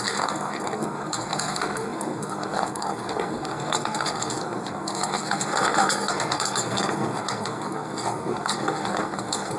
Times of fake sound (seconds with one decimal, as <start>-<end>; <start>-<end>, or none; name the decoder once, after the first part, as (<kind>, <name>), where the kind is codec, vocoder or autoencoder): 0.0-9.6 (codec, SNAC)